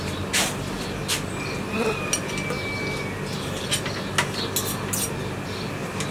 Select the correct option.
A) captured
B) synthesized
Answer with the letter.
A